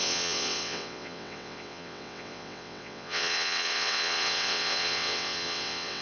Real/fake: fake